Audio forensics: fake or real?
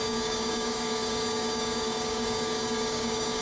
fake